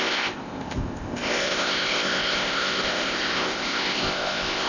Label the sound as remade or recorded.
remade